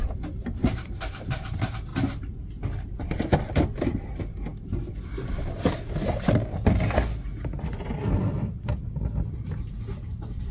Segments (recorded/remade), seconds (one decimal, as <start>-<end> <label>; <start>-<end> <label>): 0.0-10.5 recorded